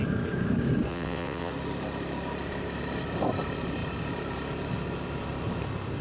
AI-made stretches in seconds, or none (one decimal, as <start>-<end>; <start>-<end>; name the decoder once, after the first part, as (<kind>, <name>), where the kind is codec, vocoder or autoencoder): 0.9-1.5 (vocoder, WaveNeXt)

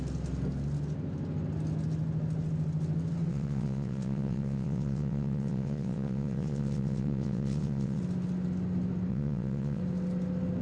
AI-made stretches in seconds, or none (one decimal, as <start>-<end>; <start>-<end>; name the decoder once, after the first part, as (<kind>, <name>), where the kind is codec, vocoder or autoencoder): 3.3-8.0 (vocoder, WaveNeXt); 9.1-9.8

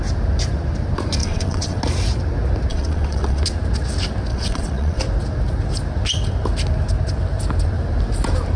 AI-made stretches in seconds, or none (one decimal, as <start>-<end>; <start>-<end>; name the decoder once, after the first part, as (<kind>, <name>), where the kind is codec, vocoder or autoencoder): 1.2-1.8 (vocoder, WaveNeXt); 2.7-3.4; 4.3-5.0